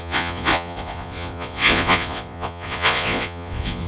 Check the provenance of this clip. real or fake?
fake